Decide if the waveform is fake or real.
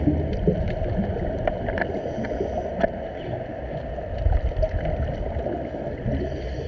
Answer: real